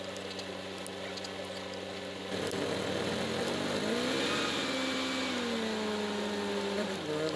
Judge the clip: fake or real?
real